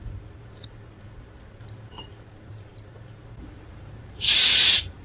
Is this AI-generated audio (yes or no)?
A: yes